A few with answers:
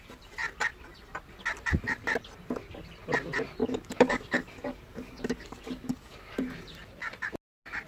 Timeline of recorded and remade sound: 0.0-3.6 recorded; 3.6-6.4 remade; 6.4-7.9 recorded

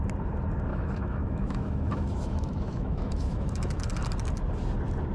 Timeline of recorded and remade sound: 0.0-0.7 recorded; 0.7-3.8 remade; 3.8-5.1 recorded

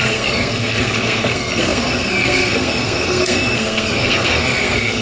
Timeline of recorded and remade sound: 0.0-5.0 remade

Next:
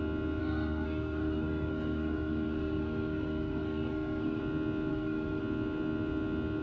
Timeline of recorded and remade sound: 0.0-0.4 recorded; 0.4-4.4 remade; 4.4-4.9 recorded; 4.9-5.4 remade; 5.4-6.6 recorded

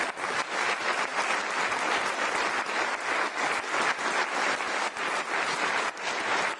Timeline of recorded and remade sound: 0.0-6.6 recorded